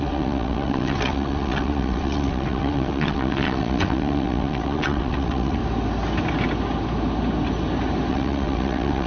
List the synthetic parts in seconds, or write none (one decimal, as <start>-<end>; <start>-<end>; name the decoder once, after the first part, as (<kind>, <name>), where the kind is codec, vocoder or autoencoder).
0.0-5.6 (vocoder, WaveNeXt); 8.1-9.1